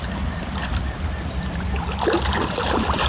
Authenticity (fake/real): real